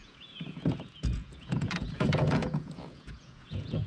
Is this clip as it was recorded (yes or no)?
no